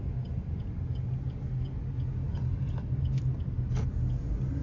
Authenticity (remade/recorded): recorded